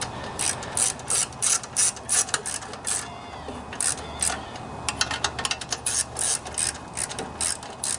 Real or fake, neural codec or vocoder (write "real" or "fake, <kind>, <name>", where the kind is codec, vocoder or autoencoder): real